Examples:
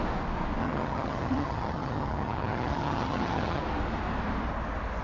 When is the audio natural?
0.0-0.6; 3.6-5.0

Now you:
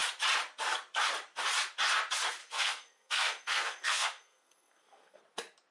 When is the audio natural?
0.0-2.4; 5.2-5.7

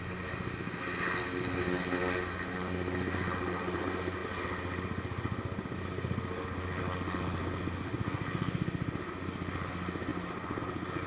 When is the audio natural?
0.0-11.1

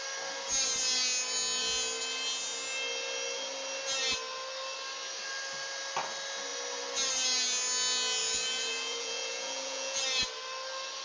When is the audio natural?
0.0-8.2; 10.0-11.0

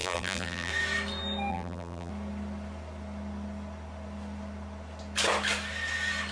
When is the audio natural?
0.7-1.5; 2.1-6.3

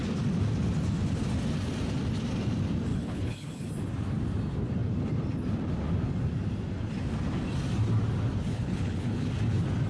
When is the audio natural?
0.0-2.9; 3.7-8.5; 9.3-9.9

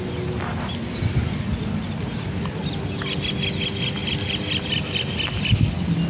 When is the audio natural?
0.0-6.1

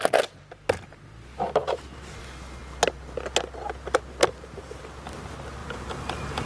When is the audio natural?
0.0-1.6; 2.2-5.6